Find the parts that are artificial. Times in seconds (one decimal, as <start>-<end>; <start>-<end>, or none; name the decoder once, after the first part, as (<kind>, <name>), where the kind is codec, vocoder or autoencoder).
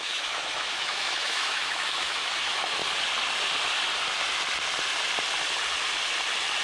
0.0-2.8 (autoencoder, DAC-VAE)